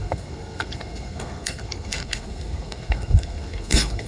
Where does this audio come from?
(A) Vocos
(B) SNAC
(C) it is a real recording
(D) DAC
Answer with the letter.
B